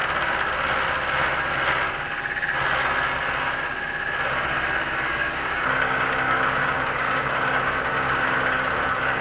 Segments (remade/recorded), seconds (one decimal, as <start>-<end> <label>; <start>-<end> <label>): 0.0-5.1 recorded; 5.1-9.2 remade